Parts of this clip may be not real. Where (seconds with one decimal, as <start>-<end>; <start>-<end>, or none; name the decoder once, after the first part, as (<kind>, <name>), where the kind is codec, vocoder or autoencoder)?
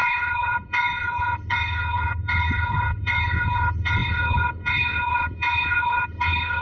0.0-6.6 (codec, HILCodec)